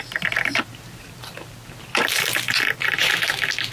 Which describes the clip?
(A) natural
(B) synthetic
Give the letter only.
A